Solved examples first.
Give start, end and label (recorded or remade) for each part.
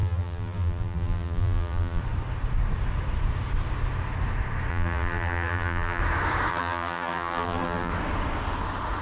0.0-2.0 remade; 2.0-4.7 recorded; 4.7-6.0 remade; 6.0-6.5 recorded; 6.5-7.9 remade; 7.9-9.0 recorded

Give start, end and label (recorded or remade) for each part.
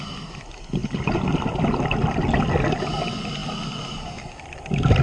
0.0-5.0 recorded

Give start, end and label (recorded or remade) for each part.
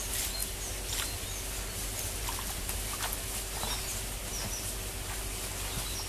0.0-6.1 recorded